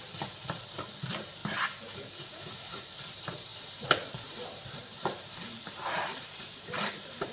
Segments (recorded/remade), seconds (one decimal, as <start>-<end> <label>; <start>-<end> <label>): 0.0-1.4 remade; 1.4-2.1 recorded; 2.1-7.3 remade